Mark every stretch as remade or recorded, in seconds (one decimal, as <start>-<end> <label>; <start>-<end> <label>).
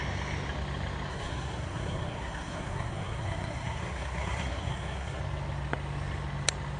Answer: 0.0-1.1 recorded; 1.1-5.2 remade; 5.2-6.8 recorded